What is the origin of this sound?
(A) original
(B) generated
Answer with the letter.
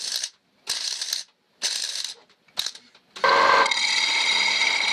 A